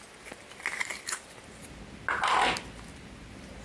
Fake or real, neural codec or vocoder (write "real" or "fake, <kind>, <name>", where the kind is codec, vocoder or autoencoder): real